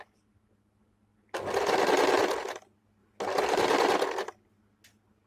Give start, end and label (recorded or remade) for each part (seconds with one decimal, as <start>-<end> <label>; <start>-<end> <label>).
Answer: 0.0-5.3 recorded